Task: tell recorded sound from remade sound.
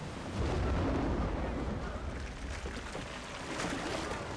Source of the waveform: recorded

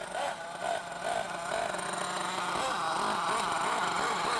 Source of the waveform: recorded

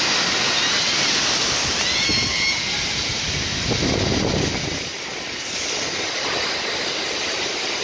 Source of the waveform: recorded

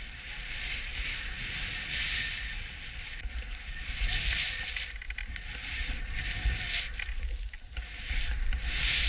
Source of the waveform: recorded